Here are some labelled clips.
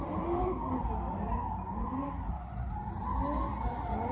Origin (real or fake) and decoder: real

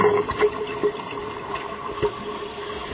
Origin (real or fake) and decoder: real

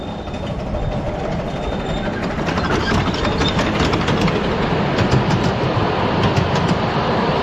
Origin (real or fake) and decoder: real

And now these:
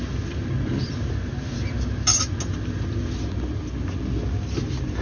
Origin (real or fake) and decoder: real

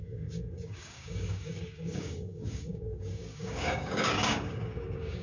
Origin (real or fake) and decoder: fake, codec, DAC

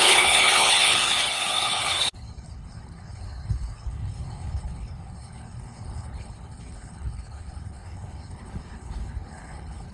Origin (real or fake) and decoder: fake, codec, HILCodec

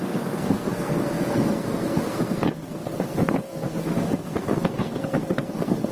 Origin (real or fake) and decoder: fake, codec, SNAC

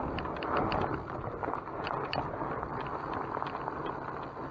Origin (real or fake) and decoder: real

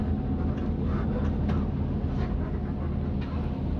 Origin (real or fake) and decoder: real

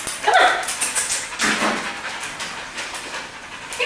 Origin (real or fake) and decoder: real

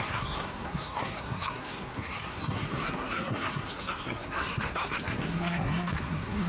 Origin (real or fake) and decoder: fake, codec, SNAC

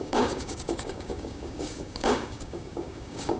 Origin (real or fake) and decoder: fake, codec, DAC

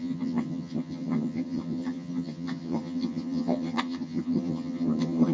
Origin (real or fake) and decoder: fake, vocoder, HiFi-GAN